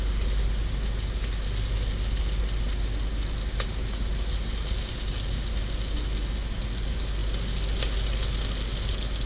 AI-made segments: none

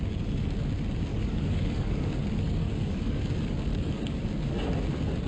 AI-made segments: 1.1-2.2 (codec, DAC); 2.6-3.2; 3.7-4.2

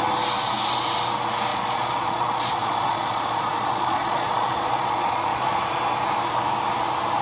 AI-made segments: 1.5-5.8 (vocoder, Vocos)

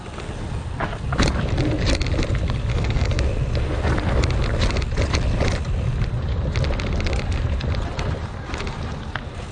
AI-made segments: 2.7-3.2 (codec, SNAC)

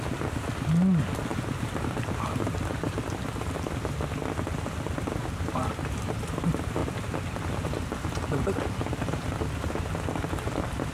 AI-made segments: 1.3-3.5 (vocoder, BigVGAN v2); 6.8-7.7

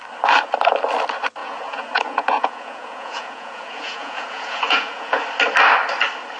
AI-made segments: 1.4-5.2 (vocoder, Vocos)